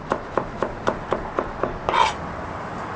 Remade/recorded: recorded